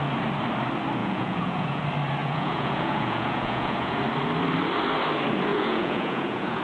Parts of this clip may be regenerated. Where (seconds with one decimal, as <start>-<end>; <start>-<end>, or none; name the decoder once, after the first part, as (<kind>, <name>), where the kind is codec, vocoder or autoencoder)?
1.0-1.8 (vocoder, Vocos); 2.2-4.0; 5.5-6.6